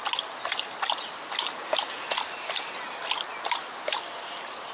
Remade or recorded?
recorded